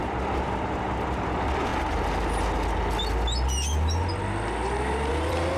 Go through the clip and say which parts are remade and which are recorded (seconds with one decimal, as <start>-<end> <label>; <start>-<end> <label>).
0.0-1.7 remade; 1.7-5.1 recorded; 5.1-5.6 remade